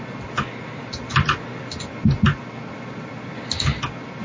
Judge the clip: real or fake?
real